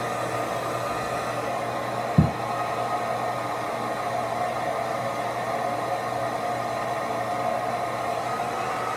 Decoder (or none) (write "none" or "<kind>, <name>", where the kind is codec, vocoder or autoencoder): none